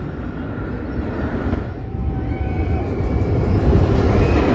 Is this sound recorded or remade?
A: recorded